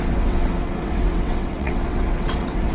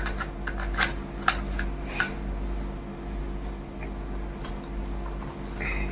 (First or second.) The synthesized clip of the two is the first